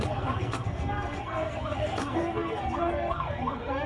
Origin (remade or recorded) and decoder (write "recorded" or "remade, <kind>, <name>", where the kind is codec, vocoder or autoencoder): remade, codec, SNAC